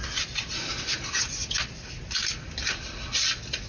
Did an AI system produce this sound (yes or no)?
no